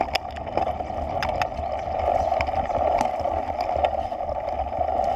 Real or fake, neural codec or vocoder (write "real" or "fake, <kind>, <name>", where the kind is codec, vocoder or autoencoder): real